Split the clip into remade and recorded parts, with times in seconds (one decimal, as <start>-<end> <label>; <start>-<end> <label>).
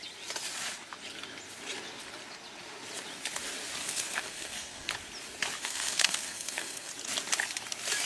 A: 0.0-3.8 recorded; 3.8-4.9 remade; 4.9-5.6 recorded; 5.6-6.9 remade; 6.9-8.1 recorded